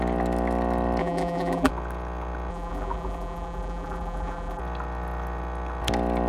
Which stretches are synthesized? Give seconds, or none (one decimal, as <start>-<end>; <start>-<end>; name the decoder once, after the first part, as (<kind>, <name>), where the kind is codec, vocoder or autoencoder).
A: 1.0-1.7 (vocoder, BigVGAN v2); 2.5-4.6